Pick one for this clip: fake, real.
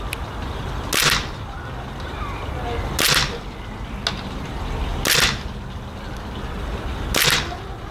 real